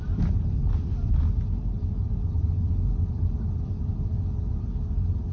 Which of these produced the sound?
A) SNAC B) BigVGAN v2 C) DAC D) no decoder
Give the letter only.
D